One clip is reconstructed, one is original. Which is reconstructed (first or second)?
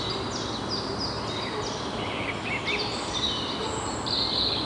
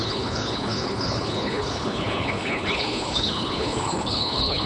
second